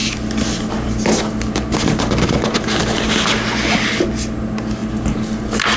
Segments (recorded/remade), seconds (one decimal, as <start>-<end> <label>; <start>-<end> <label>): 0.0-5.8 recorded

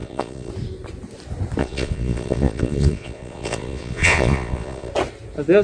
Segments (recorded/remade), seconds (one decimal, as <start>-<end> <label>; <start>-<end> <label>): 0.0-0.5 remade; 0.5-1.6 recorded; 1.6-4.9 remade; 4.9-5.6 recorded

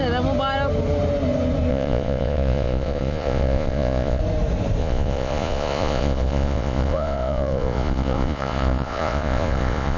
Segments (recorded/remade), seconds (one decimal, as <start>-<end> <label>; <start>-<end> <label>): 0.0-1.7 recorded; 1.7-4.2 remade; 4.2-4.8 recorded; 4.8-10.0 remade

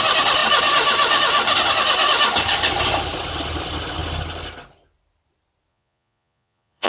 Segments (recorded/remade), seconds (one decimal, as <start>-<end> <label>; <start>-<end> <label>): 0.0-5.7 recorded; 5.7-6.9 remade

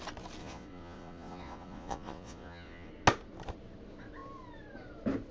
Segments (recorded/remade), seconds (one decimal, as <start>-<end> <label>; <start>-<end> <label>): 0.0-0.4 recorded; 0.4-2.9 remade; 2.9-5.3 recorded

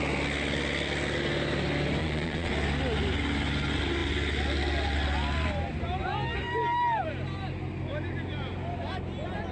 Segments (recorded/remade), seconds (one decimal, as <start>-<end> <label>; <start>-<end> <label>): 0.0-2.0 recorded; 2.0-2.5 remade; 2.5-9.5 recorded

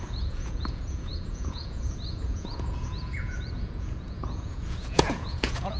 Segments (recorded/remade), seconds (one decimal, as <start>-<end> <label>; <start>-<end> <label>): 0.0-5.8 remade